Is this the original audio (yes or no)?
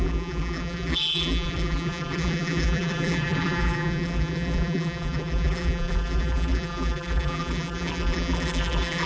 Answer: no